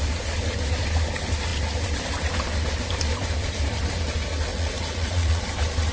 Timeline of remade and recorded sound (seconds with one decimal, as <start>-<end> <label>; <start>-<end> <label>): 0.0-4.5 recorded; 4.5-5.4 remade; 5.4-5.9 recorded